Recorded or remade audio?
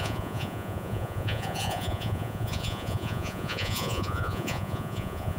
remade